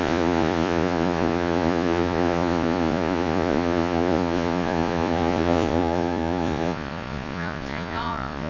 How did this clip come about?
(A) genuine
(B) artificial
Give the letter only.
B